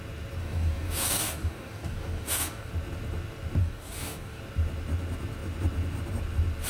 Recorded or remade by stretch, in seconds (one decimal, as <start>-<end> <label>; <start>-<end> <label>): 0.0-0.4 recorded; 0.4-2.7 remade; 2.7-3.6 recorded; 3.6-4.4 remade; 4.4-6.7 recorded